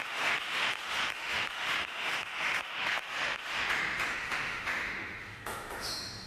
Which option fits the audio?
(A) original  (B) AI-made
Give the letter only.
B